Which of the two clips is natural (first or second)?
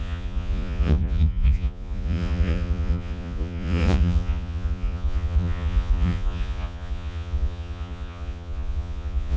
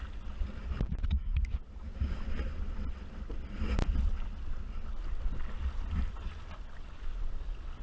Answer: second